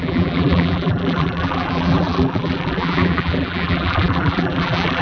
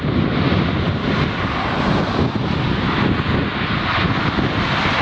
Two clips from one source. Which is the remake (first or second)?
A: first